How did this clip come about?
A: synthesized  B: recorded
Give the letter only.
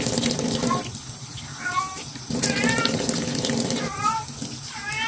B